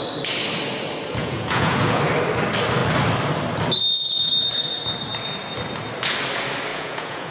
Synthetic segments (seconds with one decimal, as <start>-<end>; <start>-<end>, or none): 1.2-2.0; 6.7-7.3